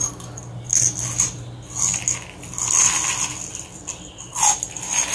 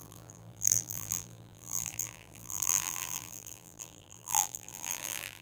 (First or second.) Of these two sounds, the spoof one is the second